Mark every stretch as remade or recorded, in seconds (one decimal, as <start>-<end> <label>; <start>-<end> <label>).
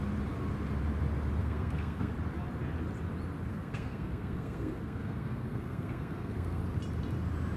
0.0-1.4 recorded; 1.4-2.1 remade; 2.1-3.5 recorded; 3.5-6.6 remade; 6.6-7.6 recorded